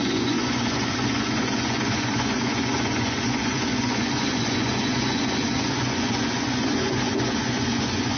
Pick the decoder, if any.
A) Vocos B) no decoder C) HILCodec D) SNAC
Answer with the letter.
A